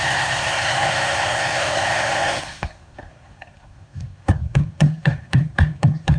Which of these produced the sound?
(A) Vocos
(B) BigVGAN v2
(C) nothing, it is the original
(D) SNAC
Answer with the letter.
D